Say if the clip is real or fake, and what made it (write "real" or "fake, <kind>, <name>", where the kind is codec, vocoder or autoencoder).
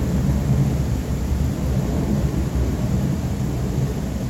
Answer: fake, vocoder, BigVGAN v2